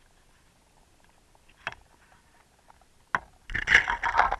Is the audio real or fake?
real